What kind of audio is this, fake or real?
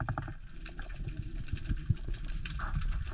real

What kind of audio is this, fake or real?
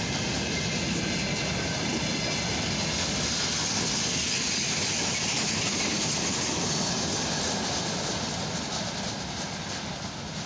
real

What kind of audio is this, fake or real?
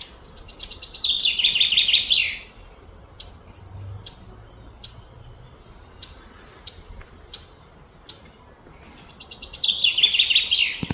real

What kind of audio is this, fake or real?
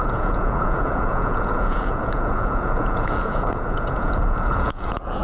fake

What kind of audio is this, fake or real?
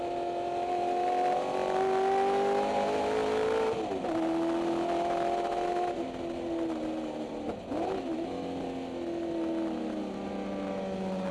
real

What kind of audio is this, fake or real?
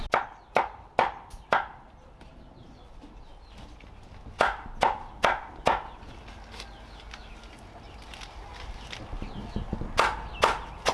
real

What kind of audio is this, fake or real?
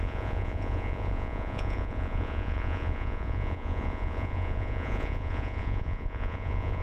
fake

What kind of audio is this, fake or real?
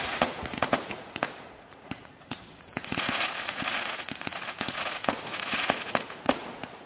fake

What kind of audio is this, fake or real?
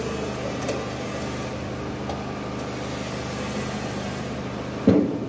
real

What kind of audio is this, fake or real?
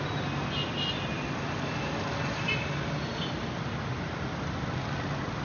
real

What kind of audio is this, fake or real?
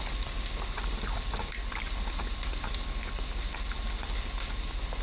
real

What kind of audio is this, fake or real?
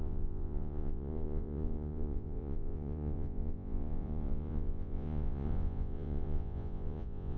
fake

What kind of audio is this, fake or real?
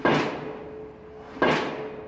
real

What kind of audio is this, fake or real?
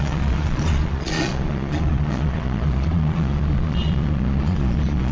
fake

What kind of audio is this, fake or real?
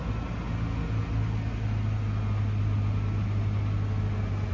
real